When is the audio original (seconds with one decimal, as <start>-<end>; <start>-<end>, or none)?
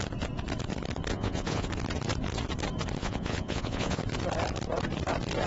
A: 0.0-1.1; 1.7-3.0; 4.0-5.5